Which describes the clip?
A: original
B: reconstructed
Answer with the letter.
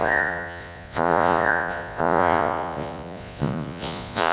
B